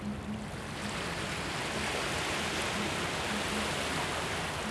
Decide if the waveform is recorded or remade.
recorded